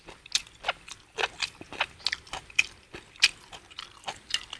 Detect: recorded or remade recorded